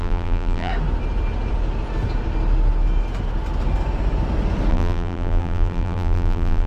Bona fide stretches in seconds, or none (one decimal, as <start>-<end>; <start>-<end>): 0.7-4.7